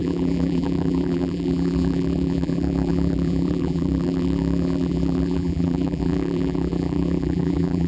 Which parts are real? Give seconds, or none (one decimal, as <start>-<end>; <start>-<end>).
none